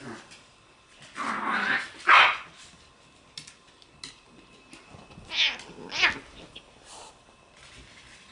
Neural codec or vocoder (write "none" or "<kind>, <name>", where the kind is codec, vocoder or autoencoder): none